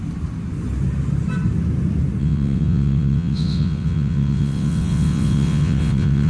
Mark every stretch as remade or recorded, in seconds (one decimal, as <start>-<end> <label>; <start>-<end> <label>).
0.0-2.2 recorded; 2.2-6.3 remade